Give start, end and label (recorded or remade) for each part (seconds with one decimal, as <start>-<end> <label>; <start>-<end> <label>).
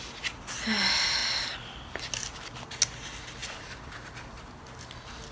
0.0-3.4 recorded; 3.4-4.6 remade; 4.6-5.3 recorded